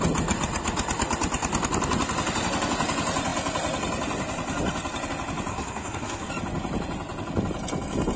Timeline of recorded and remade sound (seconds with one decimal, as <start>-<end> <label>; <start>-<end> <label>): 0.0-5.5 recorded; 5.5-6.3 remade; 6.3-8.2 recorded